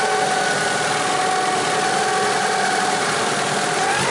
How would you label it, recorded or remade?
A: recorded